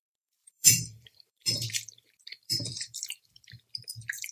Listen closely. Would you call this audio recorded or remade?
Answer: remade